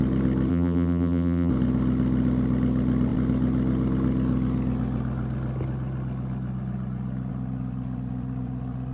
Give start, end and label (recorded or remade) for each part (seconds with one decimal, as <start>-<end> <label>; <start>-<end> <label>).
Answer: 0.0-0.5 recorded; 0.5-1.5 remade; 1.5-8.9 recorded